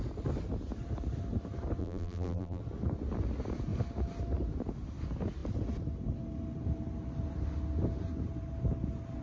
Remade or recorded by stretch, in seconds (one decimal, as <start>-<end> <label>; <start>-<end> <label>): 0.0-1.8 recorded; 1.8-2.6 remade; 2.6-9.2 recorded